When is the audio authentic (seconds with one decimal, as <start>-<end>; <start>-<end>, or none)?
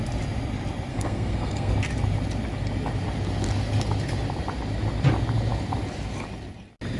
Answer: 0.0-0.9; 1.7-7.0